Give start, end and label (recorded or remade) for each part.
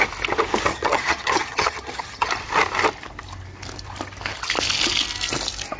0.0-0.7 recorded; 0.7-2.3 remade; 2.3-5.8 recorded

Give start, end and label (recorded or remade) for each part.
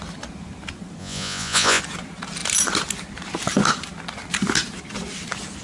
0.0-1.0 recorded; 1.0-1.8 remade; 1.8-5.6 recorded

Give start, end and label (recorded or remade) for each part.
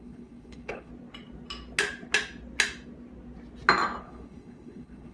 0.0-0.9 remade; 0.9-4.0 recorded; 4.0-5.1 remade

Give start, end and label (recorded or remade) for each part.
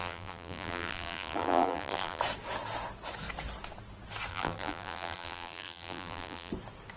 0.0-2.2 remade; 2.2-4.3 recorded; 4.3-6.5 remade; 6.5-7.0 recorded